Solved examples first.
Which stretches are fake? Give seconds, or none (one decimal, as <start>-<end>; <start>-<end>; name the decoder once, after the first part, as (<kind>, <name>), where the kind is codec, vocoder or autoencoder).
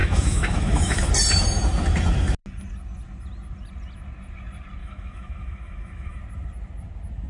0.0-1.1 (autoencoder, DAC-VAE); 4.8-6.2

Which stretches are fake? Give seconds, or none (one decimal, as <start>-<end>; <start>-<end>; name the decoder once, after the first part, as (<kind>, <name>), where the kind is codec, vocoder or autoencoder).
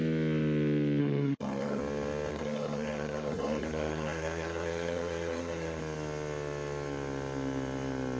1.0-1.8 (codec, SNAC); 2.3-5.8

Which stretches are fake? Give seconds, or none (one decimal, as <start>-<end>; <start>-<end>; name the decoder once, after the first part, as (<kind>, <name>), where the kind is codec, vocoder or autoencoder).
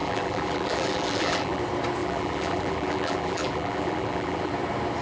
0.0-1.6 (vocoder, BigVGAN v2); 2.0-4.5